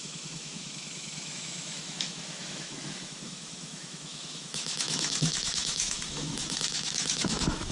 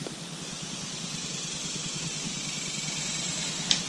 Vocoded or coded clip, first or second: first